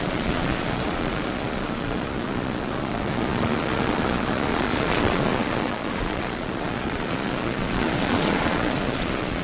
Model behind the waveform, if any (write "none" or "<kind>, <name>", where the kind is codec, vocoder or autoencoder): vocoder, Vocos